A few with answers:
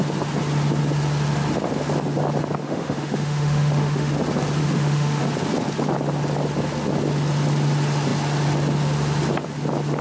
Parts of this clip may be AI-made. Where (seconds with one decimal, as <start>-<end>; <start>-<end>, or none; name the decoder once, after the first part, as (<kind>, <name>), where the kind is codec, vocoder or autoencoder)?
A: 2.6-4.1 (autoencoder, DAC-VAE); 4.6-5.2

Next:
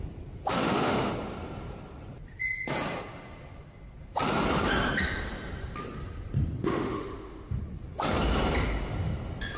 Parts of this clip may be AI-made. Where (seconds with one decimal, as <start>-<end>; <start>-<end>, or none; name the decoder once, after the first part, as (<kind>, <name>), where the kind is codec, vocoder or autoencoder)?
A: 0.5-1.1 (autoencoder, DAC-VAE); 6.6-7.6

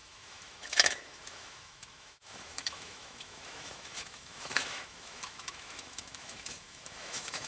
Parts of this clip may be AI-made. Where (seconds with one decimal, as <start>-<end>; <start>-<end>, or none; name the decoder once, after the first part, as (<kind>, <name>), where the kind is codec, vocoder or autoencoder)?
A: 0.0-7.5 (autoencoder, DAC-VAE)

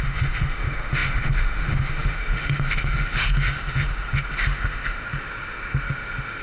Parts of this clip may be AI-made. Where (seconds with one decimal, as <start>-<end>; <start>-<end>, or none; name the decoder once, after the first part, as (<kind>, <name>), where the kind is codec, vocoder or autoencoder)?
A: 0.0-6.4 (autoencoder, DAC-VAE)

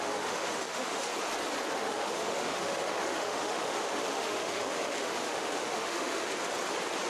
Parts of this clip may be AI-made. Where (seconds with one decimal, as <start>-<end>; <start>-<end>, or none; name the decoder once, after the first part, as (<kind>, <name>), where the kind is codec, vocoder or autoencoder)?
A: 0.0-1.1 (autoencoder, DAC-VAE); 1.7-6.3